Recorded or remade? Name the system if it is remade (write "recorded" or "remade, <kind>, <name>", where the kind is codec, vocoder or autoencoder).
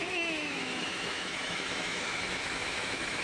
remade, autoencoder, DAC-VAE